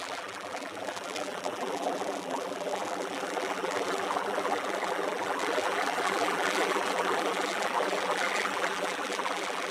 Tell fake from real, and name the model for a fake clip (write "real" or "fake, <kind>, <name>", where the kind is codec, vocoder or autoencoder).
fake, vocoder, BigVGAN v2